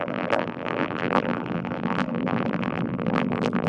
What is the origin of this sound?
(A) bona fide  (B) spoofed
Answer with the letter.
B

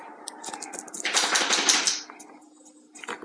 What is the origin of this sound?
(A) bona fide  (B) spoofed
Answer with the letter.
A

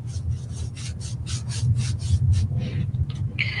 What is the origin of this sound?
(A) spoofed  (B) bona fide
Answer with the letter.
B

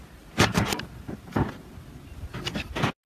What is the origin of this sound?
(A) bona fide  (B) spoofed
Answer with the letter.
A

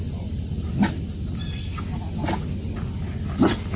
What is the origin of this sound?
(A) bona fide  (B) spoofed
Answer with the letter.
A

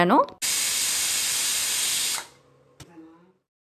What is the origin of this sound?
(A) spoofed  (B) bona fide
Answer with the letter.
B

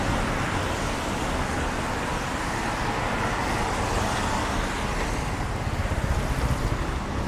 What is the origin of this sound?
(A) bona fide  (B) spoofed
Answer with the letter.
A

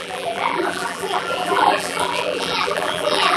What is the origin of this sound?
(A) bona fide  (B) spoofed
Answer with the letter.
B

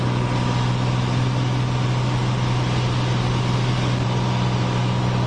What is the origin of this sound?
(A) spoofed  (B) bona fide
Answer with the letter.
B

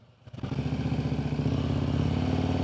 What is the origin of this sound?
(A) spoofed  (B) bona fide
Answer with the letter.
B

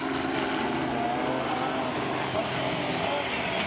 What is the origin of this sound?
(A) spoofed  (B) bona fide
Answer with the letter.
B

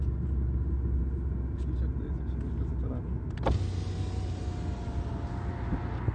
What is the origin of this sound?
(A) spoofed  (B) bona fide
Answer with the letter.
B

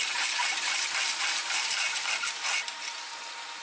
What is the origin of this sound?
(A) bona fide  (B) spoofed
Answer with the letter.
B